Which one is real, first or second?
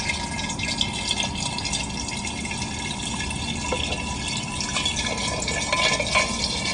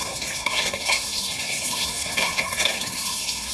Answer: first